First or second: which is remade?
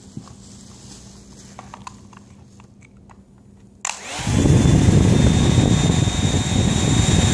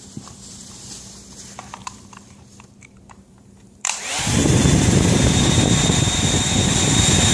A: second